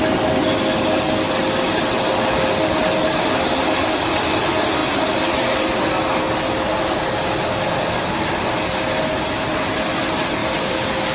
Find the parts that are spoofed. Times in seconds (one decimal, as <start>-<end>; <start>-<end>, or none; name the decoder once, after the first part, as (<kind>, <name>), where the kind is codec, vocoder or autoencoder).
none